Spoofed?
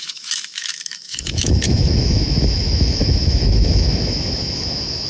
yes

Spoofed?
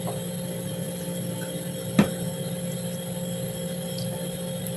no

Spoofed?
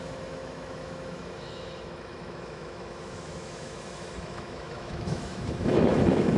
yes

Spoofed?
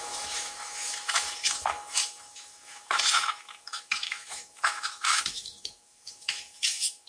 yes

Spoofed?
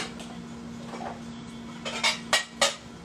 no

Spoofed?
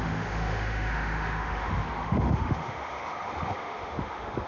yes